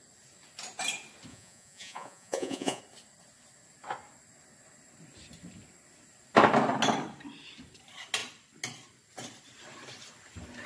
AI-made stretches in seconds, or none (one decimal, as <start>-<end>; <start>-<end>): 1.3-2.8